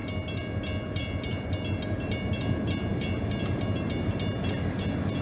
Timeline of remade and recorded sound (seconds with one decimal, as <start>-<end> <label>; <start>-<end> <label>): 0.0-5.2 recorded